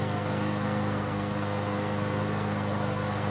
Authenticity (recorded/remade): remade